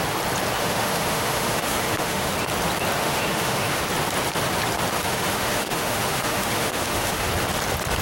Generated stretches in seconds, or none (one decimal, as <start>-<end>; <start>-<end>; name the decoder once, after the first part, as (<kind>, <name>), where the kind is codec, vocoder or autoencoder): 0.6-2.3 (autoencoder, DAC-VAE); 3.0-3.8; 5.0-7.3

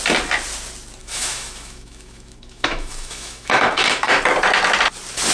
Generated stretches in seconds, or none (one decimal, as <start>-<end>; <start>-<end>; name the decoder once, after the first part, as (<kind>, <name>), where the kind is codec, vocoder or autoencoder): 1.0-4.2 (autoencoder, DAC-VAE)

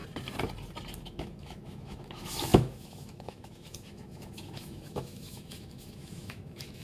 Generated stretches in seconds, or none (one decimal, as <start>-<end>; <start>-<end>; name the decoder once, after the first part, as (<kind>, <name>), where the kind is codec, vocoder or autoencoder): 1.0-6.8 (autoencoder, DAC-VAE)

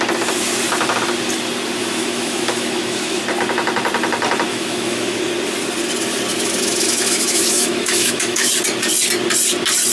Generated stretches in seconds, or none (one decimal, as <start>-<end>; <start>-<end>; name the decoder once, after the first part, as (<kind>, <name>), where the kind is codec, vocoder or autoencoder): 1.8-3.2 (autoencoder, DAC-VAE); 4.5-5.2; 6.3-8.5

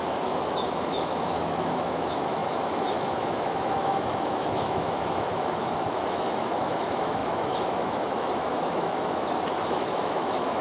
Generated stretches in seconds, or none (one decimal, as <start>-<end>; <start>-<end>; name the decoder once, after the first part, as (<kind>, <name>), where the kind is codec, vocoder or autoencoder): 0.0-10.6 (autoencoder, DAC-VAE)

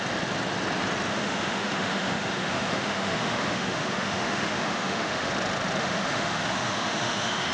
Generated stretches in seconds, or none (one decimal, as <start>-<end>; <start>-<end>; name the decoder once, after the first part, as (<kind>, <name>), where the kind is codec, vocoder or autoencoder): 1.1-5.3 (autoencoder, DAC-VAE); 5.8-7.5

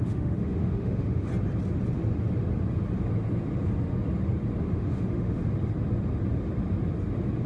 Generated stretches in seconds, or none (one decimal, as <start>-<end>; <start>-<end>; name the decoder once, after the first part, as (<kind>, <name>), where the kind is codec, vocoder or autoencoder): 0.0-1.3 (autoencoder, DAC-VAE); 4.6-5.4

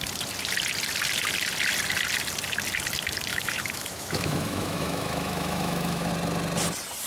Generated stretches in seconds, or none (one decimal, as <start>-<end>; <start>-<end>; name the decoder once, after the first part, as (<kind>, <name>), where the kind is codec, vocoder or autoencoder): 3.3-6.1 (autoencoder, DAC-VAE)